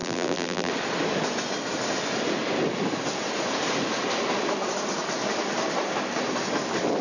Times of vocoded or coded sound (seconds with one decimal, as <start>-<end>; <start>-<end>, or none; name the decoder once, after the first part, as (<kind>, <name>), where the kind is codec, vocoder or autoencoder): 0.0-0.7 (vocoder, BigVGAN v2)